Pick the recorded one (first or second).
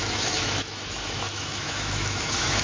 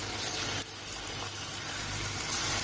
second